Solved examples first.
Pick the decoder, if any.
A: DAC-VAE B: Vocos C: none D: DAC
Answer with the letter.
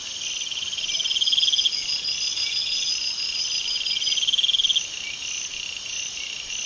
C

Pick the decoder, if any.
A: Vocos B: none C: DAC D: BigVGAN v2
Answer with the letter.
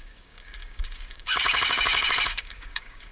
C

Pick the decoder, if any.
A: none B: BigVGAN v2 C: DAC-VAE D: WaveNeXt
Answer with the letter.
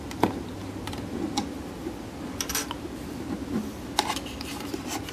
A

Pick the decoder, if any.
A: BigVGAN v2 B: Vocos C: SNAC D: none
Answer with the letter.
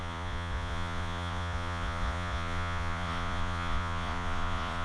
B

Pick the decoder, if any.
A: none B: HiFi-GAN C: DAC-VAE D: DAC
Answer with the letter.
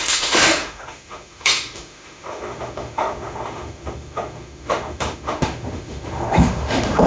C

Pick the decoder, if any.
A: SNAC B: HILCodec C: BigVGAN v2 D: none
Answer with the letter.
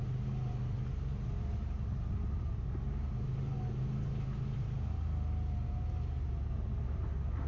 D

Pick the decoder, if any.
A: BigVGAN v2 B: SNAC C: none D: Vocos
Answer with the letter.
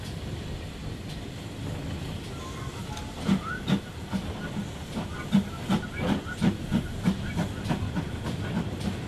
A